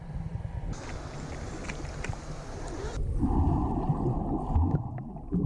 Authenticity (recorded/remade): recorded